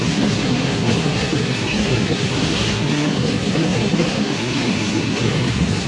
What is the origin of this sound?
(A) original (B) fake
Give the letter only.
B